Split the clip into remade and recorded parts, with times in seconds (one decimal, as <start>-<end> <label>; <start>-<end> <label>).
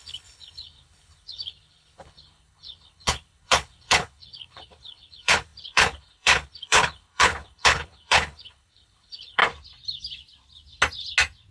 0.0-9.4 remade; 9.4-11.5 recorded